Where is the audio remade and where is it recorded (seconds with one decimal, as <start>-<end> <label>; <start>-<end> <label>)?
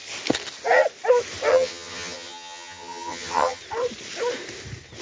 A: 0.0-1.5 recorded; 1.5-3.6 remade; 3.6-5.0 recorded